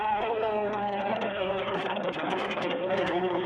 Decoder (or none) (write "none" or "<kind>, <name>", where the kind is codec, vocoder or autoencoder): codec, SNAC